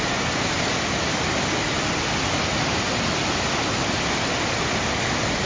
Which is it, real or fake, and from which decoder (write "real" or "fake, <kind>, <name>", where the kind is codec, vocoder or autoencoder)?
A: real